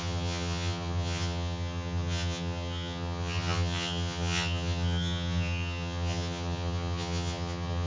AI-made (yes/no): yes